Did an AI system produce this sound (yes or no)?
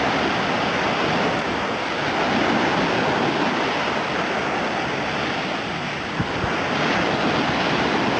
no